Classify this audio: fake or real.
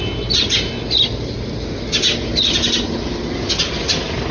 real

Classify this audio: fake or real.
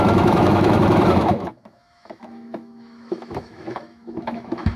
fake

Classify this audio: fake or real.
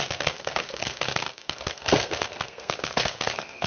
fake